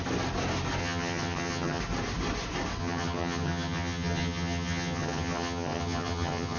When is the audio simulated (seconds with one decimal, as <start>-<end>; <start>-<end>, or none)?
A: 0.8-1.8; 2.8-6.6